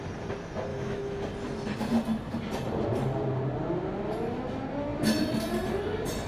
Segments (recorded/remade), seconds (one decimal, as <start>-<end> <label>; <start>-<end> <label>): 0.0-0.7 recorded; 0.7-1.2 remade; 1.2-6.3 recorded